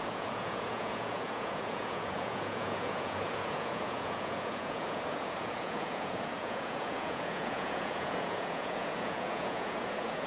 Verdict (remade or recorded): remade